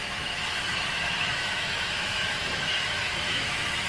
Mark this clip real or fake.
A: fake